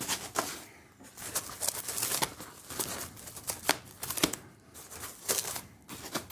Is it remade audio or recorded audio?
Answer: recorded